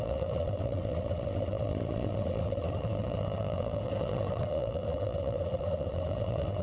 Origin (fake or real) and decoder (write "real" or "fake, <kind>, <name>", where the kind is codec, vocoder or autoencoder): fake, vocoder, WaveNeXt